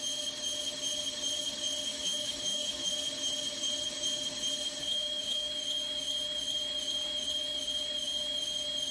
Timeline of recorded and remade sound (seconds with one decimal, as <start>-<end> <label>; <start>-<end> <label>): 0.0-1.9 recorded; 1.9-2.9 remade; 2.9-4.8 recorded; 4.8-5.5 remade; 5.5-8.9 recorded